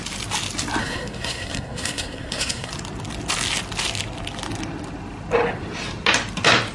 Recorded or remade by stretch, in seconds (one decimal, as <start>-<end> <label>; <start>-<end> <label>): 0.0-0.8 recorded; 0.8-2.7 remade; 2.7-6.7 recorded